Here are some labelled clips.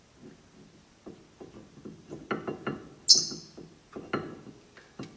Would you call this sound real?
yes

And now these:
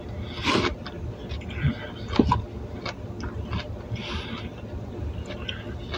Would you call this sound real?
yes